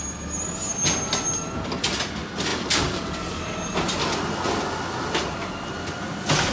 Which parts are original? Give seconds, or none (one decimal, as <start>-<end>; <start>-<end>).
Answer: 0.0-6.5